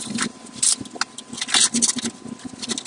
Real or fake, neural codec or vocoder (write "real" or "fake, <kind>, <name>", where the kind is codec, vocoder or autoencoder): real